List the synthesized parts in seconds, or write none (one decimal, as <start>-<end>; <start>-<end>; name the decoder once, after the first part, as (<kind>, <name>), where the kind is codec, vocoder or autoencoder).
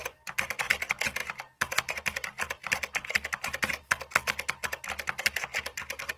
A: none